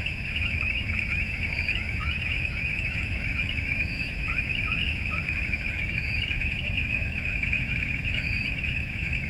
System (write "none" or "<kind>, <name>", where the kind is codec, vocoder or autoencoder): autoencoder, DAC-VAE